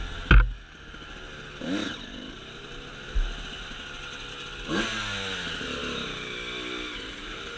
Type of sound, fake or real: real